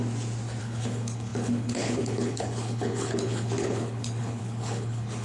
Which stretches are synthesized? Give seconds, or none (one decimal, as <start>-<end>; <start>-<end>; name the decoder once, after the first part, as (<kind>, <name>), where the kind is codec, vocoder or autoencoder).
0.6-5.2 (codec, HILCodec)